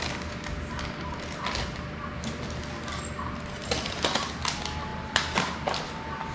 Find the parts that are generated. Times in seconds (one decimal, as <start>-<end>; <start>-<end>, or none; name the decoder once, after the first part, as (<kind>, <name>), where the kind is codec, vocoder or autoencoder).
3.6-4.3 (vocoder, BigVGAN v2); 4.9-5.8